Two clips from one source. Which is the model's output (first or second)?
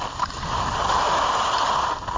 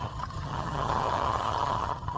second